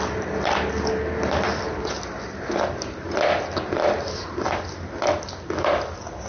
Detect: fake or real real